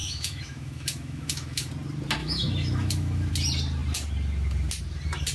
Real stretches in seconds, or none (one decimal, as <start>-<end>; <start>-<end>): 1.7-2.2; 3.3-5.3